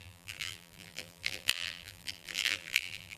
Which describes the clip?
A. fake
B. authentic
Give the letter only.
A